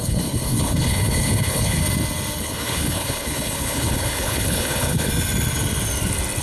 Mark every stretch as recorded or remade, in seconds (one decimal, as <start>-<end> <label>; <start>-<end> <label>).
0.0-1.8 remade; 1.8-2.4 recorded; 2.4-5.1 remade; 5.1-6.4 recorded

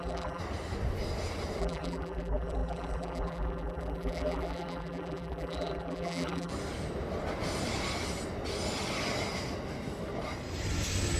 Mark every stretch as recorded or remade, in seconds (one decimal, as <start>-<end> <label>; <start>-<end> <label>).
0.0-0.4 remade; 0.4-1.6 recorded; 1.6-6.5 remade; 6.5-11.2 recorded